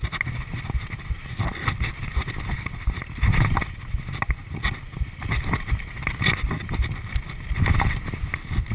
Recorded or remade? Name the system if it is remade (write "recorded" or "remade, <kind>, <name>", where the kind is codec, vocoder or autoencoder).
recorded